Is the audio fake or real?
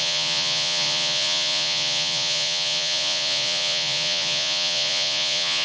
fake